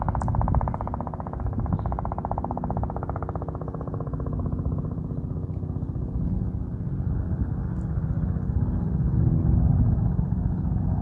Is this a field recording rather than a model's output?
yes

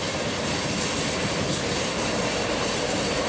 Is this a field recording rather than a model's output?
yes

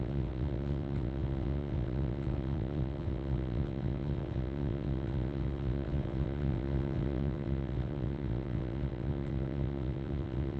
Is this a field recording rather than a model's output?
no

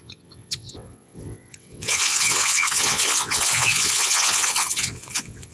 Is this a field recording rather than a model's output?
no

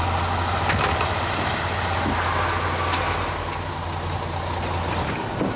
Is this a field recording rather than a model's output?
yes